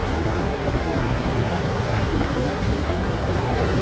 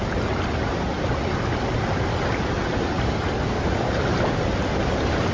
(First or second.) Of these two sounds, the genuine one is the second